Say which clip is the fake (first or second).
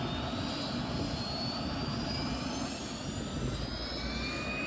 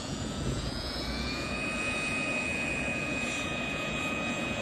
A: second